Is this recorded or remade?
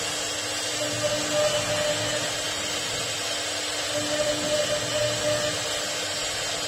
recorded